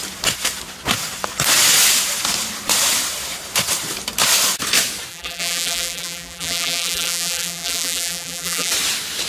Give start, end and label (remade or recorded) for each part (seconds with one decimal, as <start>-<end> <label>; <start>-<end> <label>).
0.0-5.1 recorded; 5.1-8.7 remade; 8.7-9.3 recorded